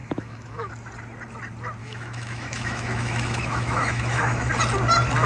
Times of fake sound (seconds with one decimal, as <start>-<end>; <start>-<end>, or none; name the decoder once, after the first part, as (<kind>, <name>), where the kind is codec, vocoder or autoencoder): 0.0-0.7 (autoencoder, DAC-VAE); 1.8-4.5